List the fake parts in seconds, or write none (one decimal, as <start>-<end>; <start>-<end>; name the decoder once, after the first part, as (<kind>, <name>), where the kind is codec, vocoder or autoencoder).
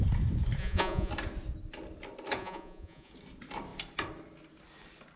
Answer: 0.6-1.1 (vocoder, Vocos); 2.4-3.1